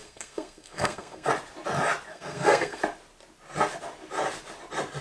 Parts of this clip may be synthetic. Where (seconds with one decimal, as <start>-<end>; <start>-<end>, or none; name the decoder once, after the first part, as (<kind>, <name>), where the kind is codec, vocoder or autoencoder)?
0.0-1.3 (codec, SNAC); 2.1-2.8